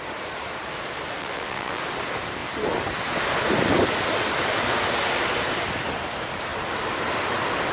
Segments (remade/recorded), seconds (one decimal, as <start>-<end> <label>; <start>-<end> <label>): 0.0-1.2 recorded; 1.2-1.8 remade; 1.8-7.7 recorded